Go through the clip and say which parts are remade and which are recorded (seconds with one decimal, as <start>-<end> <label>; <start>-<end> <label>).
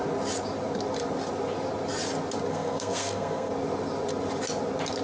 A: 0.0-2.5 recorded; 2.5-3.5 remade; 3.5-5.0 recorded